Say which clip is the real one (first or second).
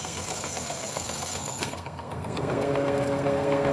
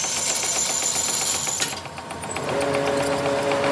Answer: second